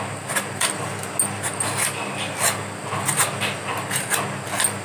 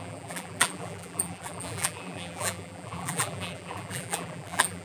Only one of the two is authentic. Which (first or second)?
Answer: first